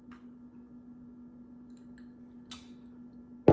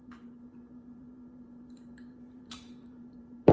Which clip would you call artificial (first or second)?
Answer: second